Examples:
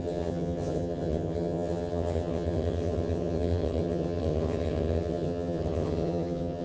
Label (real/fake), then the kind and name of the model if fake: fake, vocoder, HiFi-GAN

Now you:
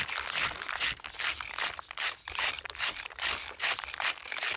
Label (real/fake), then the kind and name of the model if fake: real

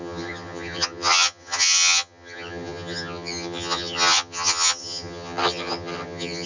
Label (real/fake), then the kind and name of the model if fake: fake, vocoder, HiFi-GAN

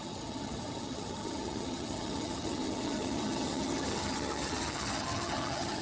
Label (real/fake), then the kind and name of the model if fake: fake, vocoder, HiFi-GAN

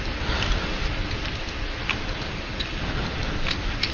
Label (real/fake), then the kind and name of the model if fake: real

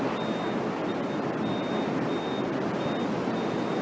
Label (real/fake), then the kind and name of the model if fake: real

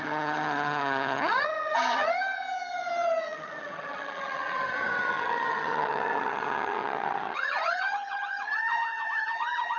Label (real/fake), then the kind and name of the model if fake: fake, vocoder, HiFi-GAN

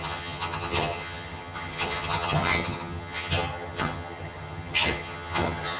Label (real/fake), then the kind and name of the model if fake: fake, vocoder, HiFi-GAN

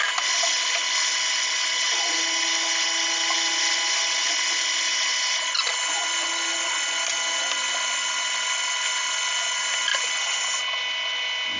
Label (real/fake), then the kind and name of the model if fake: real